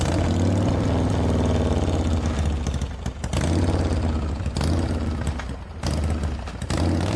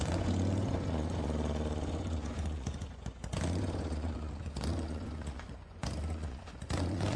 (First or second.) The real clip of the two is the first